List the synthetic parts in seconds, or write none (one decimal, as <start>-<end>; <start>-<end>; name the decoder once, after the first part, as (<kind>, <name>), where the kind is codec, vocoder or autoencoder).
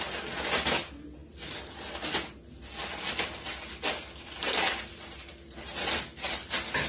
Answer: none